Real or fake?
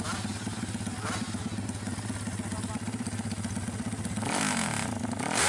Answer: real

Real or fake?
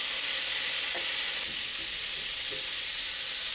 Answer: real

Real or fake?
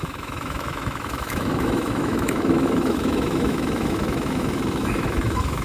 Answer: fake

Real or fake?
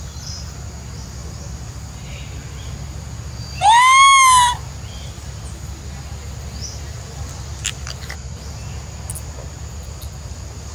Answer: real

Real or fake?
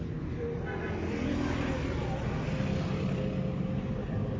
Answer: real